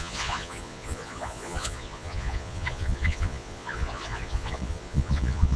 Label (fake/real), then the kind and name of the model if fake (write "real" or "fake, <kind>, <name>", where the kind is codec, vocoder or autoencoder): fake, vocoder, Vocos